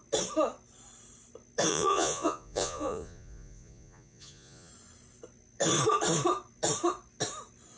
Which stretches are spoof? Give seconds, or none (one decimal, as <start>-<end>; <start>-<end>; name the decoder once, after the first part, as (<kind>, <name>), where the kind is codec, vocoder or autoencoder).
1.7-4.7 (vocoder, Vocos)